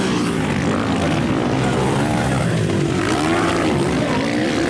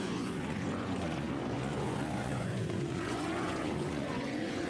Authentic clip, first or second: first